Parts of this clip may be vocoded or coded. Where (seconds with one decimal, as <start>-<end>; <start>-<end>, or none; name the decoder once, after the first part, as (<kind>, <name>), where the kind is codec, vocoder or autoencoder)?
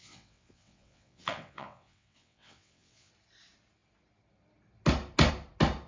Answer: 0.0-3.1 (vocoder, WaveNeXt)